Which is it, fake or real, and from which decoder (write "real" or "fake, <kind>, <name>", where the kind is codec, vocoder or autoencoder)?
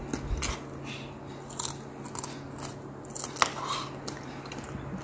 real